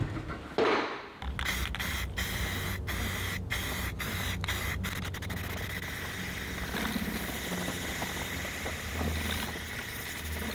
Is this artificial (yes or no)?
no